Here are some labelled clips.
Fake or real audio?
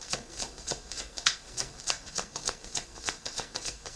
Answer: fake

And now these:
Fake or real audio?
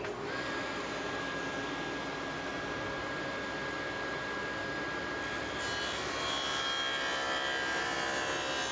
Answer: real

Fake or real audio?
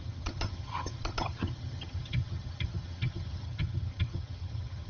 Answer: fake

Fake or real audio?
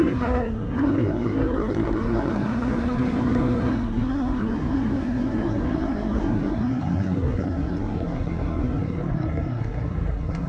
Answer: fake